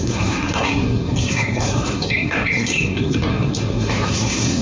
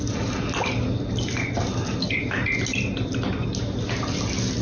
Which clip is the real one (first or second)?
second